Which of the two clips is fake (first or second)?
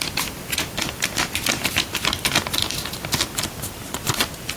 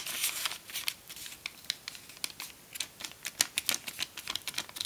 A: first